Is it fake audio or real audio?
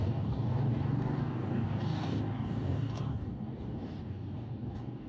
fake